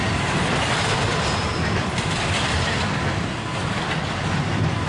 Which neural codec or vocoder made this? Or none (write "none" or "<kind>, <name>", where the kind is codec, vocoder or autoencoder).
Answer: vocoder, BigVGAN v2